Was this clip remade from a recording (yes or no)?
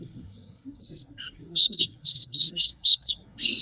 yes